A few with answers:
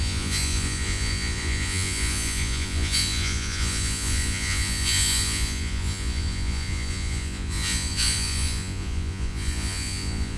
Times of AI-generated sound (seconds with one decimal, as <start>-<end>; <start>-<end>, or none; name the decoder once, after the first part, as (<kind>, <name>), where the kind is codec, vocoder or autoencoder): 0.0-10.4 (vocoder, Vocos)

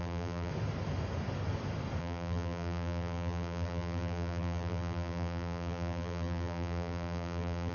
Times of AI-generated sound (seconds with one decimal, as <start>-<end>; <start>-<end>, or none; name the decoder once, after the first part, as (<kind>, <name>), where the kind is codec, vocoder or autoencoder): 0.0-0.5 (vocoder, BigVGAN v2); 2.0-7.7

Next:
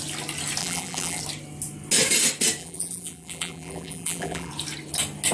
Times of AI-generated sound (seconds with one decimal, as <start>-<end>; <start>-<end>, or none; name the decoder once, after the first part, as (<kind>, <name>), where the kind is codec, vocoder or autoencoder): 0.6-1.2 (vocoder, BigVGAN v2); 2.6-4.5